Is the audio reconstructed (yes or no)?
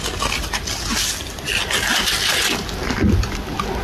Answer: no